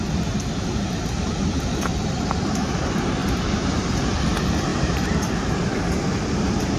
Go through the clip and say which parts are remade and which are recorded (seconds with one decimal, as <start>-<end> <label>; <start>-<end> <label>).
0.0-3.2 recorded; 3.2-4.2 remade; 4.2-4.7 recorded; 4.7-6.8 remade